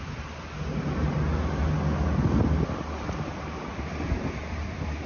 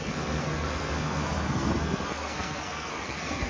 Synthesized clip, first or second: second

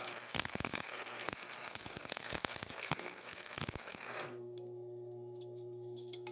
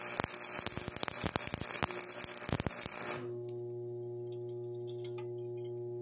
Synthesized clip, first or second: first